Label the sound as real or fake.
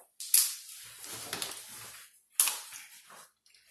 real